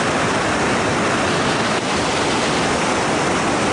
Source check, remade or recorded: recorded